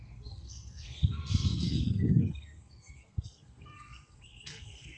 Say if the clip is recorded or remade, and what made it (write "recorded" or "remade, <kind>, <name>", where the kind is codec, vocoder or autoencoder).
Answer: remade, codec, SNAC